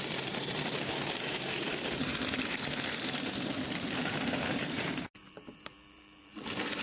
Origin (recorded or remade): remade